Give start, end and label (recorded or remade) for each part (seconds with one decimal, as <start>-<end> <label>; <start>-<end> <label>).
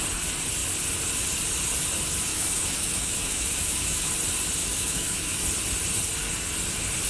0.0-2.3 recorded; 2.3-4.1 remade; 4.1-4.6 recorded; 4.6-5.4 remade; 5.4-7.1 recorded